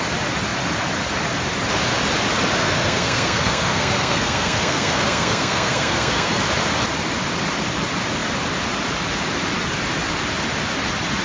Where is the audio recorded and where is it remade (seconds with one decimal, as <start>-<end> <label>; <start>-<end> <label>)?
0.0-2.6 recorded; 2.6-6.4 remade; 6.4-11.2 recorded

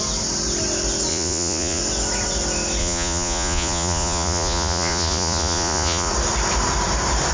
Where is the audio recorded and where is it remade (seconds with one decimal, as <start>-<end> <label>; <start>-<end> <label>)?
0.0-1.1 recorded; 1.1-1.8 remade; 1.8-2.8 recorded; 2.8-6.1 remade; 6.1-7.3 recorded

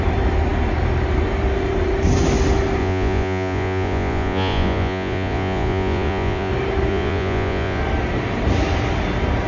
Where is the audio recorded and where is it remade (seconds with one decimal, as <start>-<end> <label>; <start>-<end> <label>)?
0.0-2.8 recorded; 2.8-6.5 remade; 6.5-6.9 recorded; 6.9-7.8 remade; 7.8-9.5 recorded

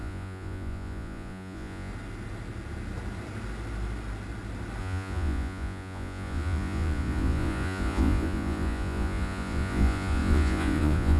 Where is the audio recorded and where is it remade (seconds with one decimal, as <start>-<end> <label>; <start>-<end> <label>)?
0.0-1.9 remade; 1.9-4.8 recorded; 4.8-11.2 remade

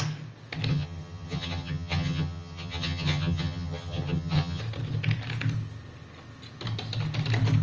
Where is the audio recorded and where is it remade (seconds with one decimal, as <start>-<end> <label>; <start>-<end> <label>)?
0.0-0.7 recorded; 0.7-4.6 remade; 4.6-7.6 recorded